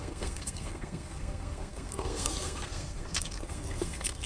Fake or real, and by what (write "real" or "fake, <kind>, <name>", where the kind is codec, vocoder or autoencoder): fake, codec, SNAC